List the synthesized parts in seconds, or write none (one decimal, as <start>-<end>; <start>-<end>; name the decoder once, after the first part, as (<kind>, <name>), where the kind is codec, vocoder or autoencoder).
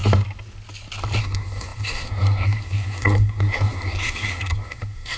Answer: 1.2-5.2 (codec, SNAC)